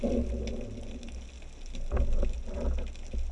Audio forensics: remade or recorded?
recorded